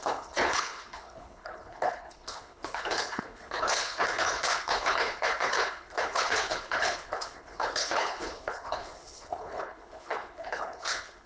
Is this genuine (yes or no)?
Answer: no